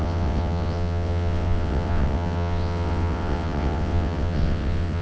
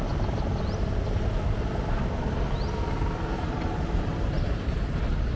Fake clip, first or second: first